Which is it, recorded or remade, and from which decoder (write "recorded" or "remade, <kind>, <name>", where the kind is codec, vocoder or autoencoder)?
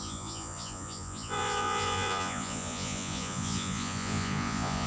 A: remade, vocoder, Vocos